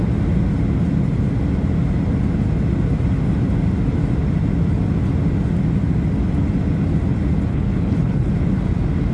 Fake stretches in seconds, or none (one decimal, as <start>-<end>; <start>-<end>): 7.5-8.3